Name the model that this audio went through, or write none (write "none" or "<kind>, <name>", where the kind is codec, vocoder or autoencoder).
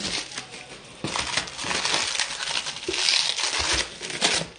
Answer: none